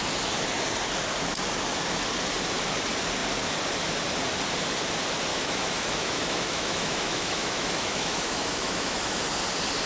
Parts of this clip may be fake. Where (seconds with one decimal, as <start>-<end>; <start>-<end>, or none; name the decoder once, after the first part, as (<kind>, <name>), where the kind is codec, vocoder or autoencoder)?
5.3-9.2 (autoencoder, DAC-VAE)